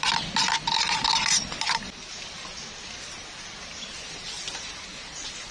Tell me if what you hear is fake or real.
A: real